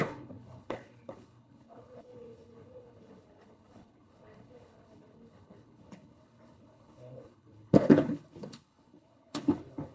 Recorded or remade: remade